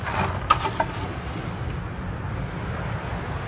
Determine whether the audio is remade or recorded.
recorded